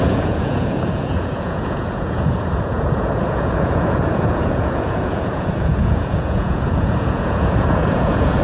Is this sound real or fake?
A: fake